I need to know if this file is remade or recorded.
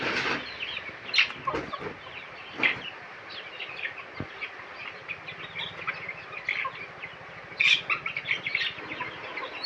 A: recorded